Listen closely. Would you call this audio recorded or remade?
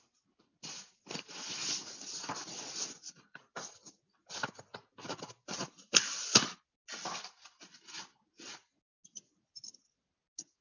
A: recorded